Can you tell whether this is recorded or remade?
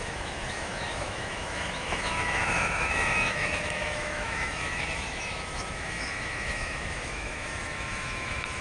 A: remade